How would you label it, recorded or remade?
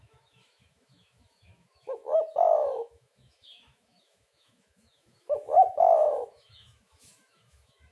remade